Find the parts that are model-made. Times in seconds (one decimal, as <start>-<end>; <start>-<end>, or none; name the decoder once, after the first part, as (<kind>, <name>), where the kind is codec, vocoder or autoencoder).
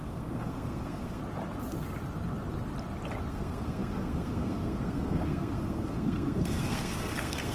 0.0-1.2 (codec, SNAC); 3.3-7.5